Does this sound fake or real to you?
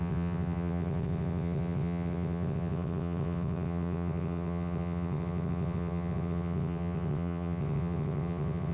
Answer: fake